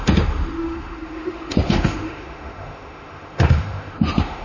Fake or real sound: fake